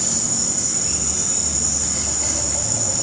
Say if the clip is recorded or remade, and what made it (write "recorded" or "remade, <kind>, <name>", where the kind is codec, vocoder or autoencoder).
recorded